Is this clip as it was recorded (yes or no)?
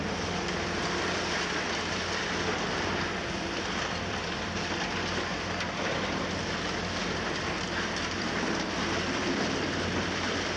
no